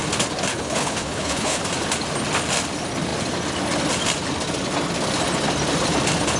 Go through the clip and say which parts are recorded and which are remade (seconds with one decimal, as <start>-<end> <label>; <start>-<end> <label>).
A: 0.0-0.5 recorded; 0.5-1.6 remade; 1.6-6.4 recorded

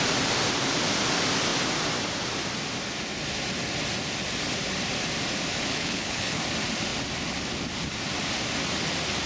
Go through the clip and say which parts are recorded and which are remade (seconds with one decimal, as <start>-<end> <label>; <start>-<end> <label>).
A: 0.0-5.7 recorded; 5.7-6.4 remade; 6.4-9.3 recorded

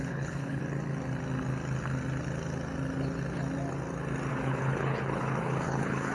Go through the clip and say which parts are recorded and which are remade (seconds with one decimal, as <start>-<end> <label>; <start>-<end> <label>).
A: 0.0-0.6 remade; 0.6-4.3 recorded; 4.3-6.1 remade

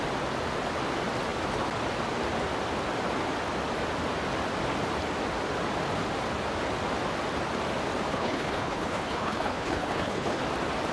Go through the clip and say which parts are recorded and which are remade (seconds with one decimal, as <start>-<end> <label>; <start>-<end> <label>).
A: 0.0-8.1 recorded; 8.1-10.4 remade; 10.4-10.9 recorded

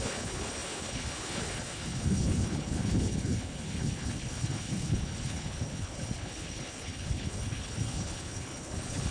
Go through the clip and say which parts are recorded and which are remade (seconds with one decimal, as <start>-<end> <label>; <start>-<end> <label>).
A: 0.0-9.1 remade

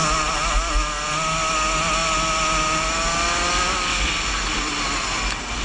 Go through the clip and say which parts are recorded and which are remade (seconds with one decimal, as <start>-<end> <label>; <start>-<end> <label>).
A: 0.0-5.6 recorded

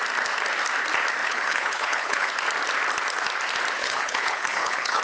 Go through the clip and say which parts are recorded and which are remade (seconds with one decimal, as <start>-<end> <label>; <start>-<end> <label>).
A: 0.0-1.2 recorded; 1.2-2.3 remade; 2.3-3.8 recorded; 3.8-5.0 remade